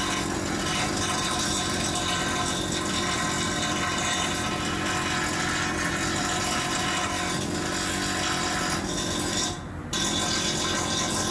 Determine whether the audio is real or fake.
real